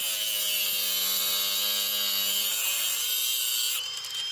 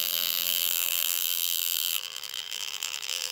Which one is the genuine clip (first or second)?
first